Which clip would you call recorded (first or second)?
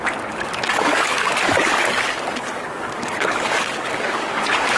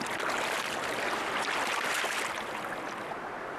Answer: second